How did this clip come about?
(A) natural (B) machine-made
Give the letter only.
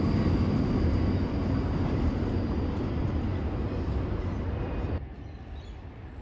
A